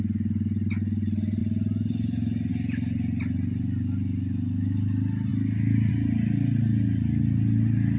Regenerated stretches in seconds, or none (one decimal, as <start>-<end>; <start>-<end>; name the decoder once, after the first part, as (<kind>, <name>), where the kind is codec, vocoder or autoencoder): none

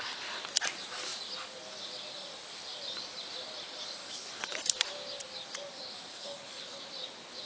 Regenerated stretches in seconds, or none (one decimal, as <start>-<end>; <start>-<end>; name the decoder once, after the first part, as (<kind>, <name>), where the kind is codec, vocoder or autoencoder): 4.0-4.9 (codec, HILCodec); 6.1-6.8

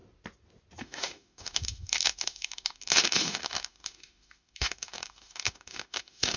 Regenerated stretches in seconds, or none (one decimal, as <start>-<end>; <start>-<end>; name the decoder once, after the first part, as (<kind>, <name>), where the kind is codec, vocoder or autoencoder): 0.8-6.4 (autoencoder, DAC-VAE)